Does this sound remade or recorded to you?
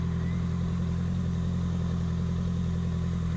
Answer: recorded